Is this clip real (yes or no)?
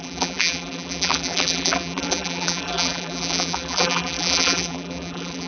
no